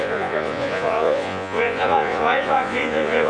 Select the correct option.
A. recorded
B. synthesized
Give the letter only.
B